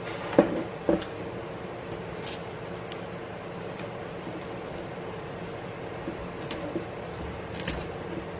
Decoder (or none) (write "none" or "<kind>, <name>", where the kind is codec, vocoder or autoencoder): none